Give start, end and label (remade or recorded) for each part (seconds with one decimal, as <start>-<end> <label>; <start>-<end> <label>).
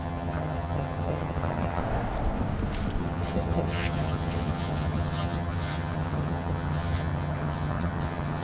0.0-1.8 remade; 1.8-3.0 recorded; 3.0-8.4 remade